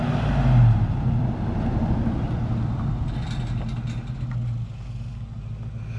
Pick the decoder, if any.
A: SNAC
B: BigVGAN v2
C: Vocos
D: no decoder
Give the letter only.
D